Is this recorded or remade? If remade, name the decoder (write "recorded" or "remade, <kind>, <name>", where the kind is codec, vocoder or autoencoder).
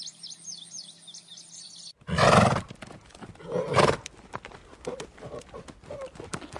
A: recorded